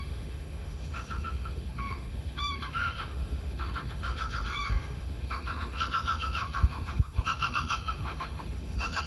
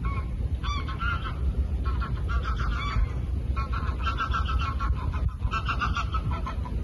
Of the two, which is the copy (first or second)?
first